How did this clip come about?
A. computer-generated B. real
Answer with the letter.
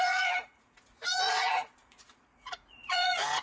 A